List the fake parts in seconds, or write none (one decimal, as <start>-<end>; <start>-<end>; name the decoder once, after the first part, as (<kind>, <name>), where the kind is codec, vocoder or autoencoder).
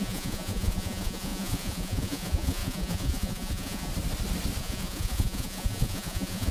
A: 0.0-3.9 (vocoder, Vocos); 4.6-6.5